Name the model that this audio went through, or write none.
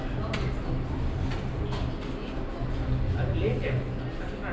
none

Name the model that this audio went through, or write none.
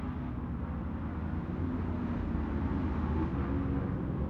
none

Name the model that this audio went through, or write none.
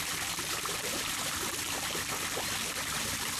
none